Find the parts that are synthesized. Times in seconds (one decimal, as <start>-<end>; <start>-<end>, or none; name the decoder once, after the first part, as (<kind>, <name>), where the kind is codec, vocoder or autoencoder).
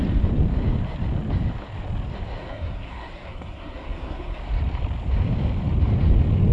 2.4-4.4 (codec, SNAC)